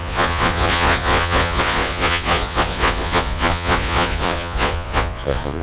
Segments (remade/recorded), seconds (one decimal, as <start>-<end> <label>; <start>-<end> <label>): 0.0-5.6 remade